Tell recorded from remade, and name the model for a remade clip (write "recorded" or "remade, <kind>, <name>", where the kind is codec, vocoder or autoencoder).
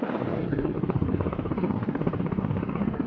remade, codec, SNAC